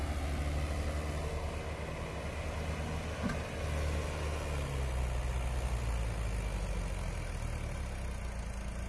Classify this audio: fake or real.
real